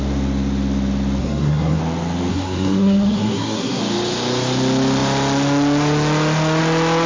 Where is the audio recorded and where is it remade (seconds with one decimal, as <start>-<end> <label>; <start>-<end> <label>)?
0.0-1.2 recorded; 1.2-1.8 remade; 1.8-2.3 recorded; 2.3-3.8 remade; 3.8-7.1 recorded